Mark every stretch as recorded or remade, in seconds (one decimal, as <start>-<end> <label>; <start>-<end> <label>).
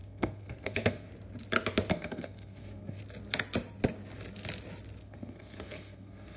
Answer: 0.0-1.1 remade; 1.1-1.9 recorded; 1.9-3.0 remade; 3.0-5.0 recorded; 5.0-6.4 remade